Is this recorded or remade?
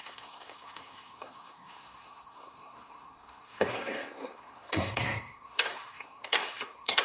remade